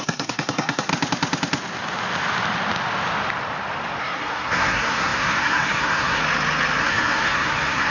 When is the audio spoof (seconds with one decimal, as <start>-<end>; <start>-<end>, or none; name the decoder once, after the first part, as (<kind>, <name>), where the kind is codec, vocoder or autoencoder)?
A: 0.0-0.9 (codec, SNAC); 4.0-6.2; 6.8-7.9